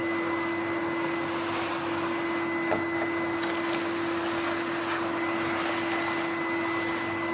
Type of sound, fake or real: real